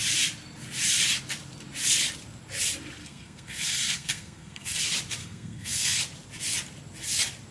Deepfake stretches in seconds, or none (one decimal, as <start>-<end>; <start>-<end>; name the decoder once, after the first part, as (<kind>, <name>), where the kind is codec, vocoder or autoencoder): 3.0-4.8 (codec, SNAC); 5.2-6.0